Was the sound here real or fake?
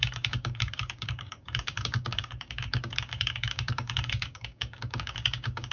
fake